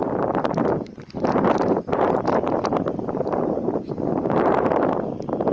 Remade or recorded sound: remade